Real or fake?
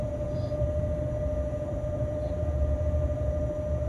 fake